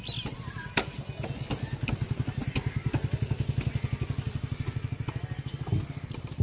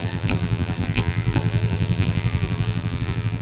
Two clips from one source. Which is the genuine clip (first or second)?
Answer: first